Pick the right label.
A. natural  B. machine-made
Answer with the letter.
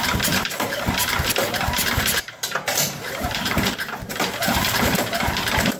B